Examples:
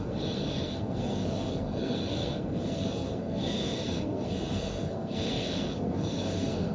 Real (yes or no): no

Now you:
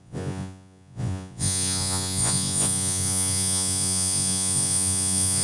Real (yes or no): no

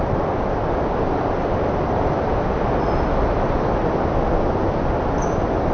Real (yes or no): yes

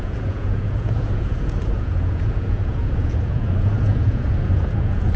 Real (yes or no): no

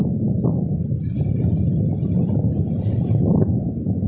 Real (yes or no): no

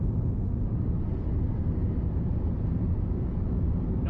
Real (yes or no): yes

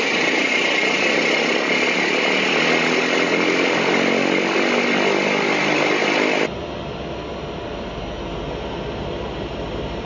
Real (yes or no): yes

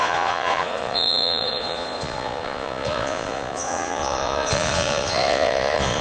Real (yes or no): no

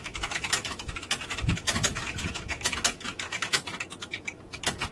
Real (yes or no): no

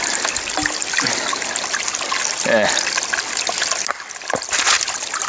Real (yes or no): yes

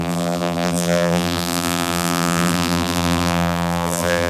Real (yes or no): no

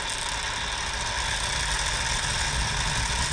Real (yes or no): yes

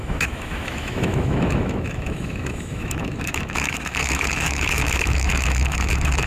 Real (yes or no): no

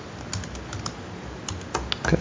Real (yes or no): yes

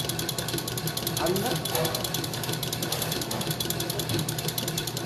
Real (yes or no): yes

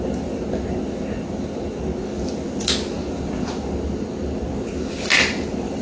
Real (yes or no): yes